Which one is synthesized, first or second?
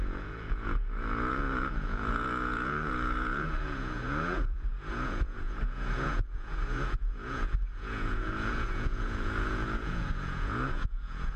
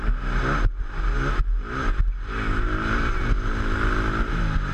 first